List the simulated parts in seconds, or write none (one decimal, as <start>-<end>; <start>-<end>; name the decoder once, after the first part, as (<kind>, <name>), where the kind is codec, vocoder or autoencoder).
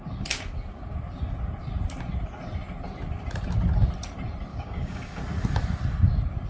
4.5-5.2 (codec, DAC)